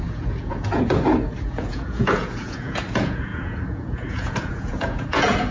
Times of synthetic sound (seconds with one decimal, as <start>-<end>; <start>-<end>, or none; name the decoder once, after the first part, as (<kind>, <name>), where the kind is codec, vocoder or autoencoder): 0.0-5.5 (vocoder, Vocos)